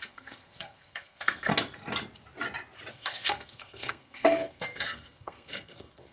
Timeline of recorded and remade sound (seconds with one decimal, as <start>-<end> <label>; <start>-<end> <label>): 0.0-1.5 remade; 1.5-2.9 recorded; 2.9-6.1 remade